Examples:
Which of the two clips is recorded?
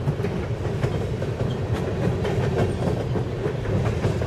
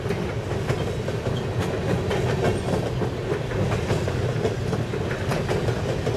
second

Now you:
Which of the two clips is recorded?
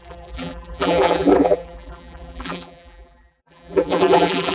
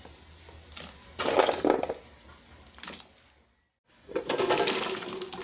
second